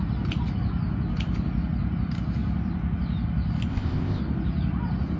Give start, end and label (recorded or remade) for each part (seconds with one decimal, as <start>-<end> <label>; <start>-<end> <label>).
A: 0.0-3.7 recorded; 3.7-4.2 remade; 4.2-5.2 recorded

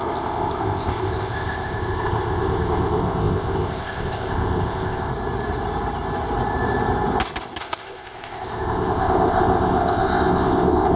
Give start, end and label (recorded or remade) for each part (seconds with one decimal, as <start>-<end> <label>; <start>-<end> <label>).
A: 0.0-5.1 remade; 5.1-7.6 recorded; 7.6-11.0 remade

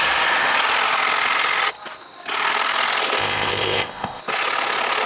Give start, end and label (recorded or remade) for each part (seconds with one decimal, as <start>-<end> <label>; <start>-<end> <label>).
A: 0.0-3.2 recorded; 3.2-4.2 remade; 4.2-5.1 recorded

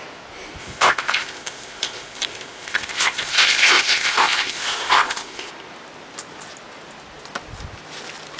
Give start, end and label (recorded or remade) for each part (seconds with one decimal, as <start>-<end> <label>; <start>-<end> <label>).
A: 0.0-0.6 recorded; 0.6-5.5 remade; 5.5-8.4 recorded

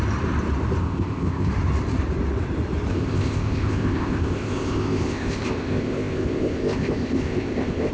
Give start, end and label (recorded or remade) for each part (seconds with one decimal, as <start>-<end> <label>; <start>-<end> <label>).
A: 0.0-0.8 recorded; 0.8-1.5 remade; 1.5-2.9 recorded; 2.9-7.9 remade

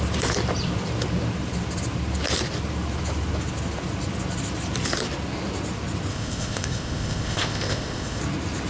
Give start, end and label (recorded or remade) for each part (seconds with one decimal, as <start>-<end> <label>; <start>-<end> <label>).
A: 0.0-6.1 recorded; 6.1-8.2 remade; 8.2-8.7 recorded

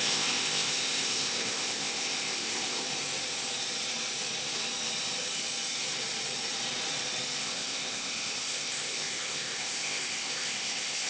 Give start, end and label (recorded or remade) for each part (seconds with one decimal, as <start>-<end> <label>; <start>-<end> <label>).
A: 0.0-2.8 remade; 2.8-7.4 recorded; 7.4-11.1 remade

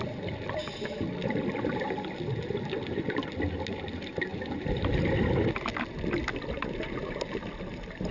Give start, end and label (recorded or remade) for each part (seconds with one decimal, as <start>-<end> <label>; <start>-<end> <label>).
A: 0.0-8.1 recorded